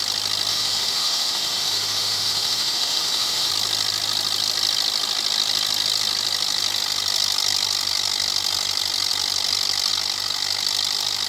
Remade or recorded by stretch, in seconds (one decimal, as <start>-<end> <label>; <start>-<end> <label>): 0.0-0.5 recorded; 0.5-3.5 remade; 3.5-11.3 recorded